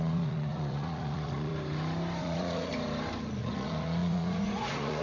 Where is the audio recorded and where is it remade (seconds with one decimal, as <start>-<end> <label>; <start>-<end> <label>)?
0.0-1.5 remade; 1.5-2.2 recorded; 2.2-2.7 remade; 2.7-3.4 recorded; 3.4-5.0 remade